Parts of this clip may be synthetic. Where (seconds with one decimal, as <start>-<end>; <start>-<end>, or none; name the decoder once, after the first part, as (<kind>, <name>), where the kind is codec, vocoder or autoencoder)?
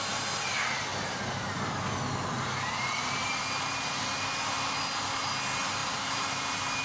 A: 0.9-1.6 (vocoder, BigVGAN v2); 2.5-3.8; 5.8-6.8